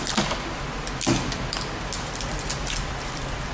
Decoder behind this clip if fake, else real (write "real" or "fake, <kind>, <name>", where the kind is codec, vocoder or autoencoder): real